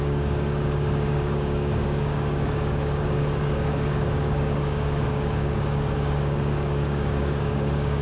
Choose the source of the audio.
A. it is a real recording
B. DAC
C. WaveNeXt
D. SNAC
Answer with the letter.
B